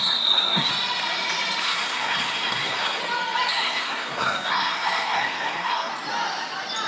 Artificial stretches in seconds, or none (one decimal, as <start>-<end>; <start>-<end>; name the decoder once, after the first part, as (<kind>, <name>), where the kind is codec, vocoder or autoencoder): 0.0-0.7 (codec, SNAC); 1.6-3.0; 3.5-5.9